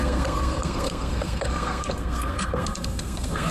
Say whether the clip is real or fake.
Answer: fake